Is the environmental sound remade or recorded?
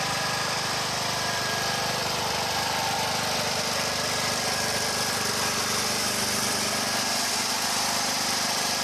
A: remade